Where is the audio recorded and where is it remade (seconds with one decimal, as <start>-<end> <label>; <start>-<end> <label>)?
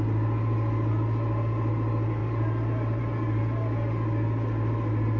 0.0-5.2 recorded